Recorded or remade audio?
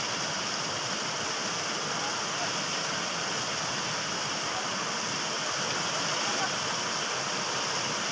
recorded